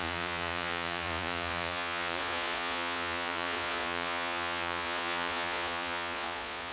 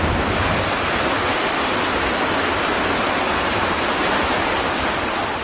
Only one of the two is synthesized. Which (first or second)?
first